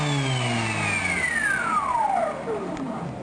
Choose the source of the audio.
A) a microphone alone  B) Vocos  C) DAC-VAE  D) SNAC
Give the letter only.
A